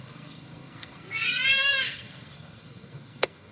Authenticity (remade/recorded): remade